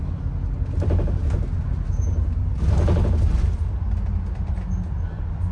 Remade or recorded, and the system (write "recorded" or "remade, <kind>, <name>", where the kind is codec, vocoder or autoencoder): recorded